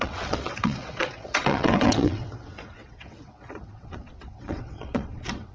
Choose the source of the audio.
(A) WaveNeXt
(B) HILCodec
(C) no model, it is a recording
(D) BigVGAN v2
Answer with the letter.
A